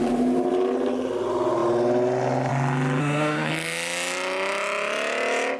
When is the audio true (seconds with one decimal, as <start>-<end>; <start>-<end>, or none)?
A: 0.0-3.0; 3.5-5.6